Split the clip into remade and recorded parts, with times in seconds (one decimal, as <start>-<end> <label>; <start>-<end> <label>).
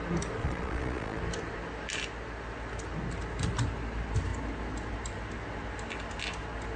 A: 0.0-0.4 recorded; 0.4-1.2 remade; 1.2-6.8 recorded